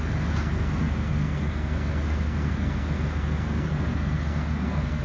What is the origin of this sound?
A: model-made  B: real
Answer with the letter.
A